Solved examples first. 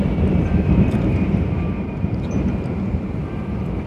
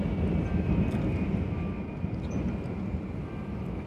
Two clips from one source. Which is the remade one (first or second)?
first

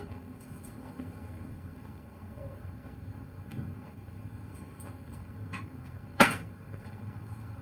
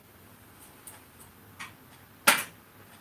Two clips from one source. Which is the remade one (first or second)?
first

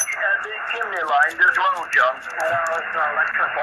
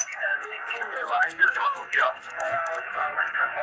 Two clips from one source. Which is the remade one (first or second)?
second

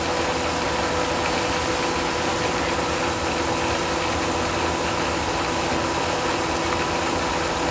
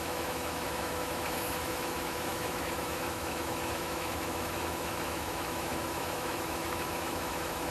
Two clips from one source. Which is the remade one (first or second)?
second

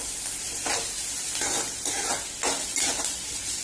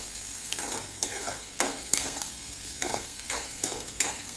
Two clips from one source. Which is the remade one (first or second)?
second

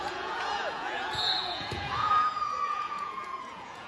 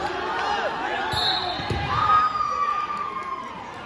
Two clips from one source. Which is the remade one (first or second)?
first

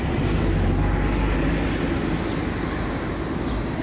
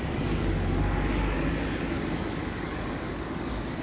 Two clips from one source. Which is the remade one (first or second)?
second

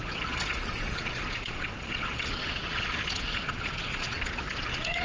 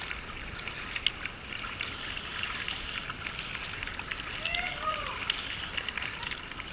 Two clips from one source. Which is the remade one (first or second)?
first